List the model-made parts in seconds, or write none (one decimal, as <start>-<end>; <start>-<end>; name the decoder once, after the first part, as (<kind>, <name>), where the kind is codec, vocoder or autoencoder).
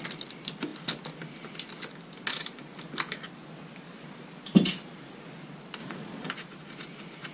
5.8-6.3 (vocoder, Vocos)